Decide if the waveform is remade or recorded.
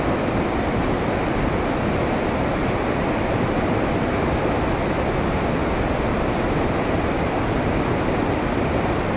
recorded